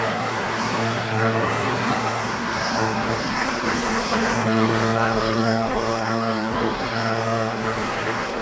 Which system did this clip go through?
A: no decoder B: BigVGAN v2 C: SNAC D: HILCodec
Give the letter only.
C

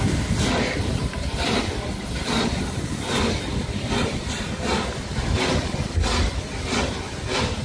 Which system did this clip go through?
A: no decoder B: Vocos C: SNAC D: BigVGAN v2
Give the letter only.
A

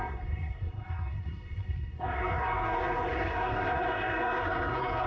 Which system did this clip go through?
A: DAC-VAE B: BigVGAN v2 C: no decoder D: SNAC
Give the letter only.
D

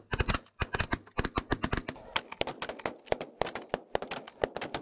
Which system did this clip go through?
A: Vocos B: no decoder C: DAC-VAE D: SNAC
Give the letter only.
B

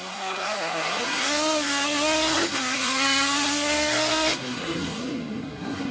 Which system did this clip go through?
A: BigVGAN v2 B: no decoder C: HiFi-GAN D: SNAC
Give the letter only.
D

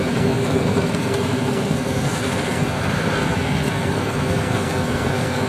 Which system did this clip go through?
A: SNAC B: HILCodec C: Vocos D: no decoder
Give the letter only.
A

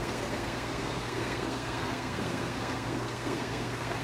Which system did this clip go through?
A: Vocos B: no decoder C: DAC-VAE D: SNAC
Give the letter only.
D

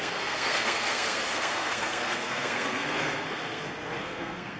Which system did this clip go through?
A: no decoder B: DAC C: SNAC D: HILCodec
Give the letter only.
C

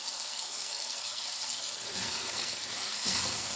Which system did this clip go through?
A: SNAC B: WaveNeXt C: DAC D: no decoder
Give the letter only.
A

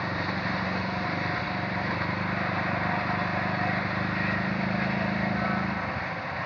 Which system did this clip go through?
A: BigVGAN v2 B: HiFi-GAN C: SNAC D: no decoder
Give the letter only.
D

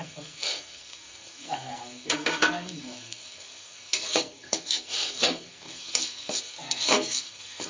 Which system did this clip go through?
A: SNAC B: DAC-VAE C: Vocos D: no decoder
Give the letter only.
A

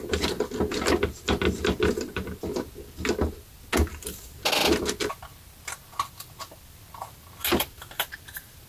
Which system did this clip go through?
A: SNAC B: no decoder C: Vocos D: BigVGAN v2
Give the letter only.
B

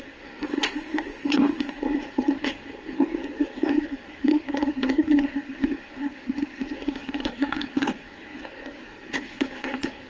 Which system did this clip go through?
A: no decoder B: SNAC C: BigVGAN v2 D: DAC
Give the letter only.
B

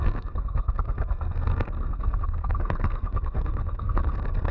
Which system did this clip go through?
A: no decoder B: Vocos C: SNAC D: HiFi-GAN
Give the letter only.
C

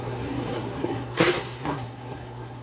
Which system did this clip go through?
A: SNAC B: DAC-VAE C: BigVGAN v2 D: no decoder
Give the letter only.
A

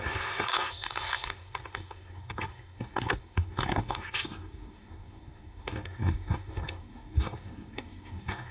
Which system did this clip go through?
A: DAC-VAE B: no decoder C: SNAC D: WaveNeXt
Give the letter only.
C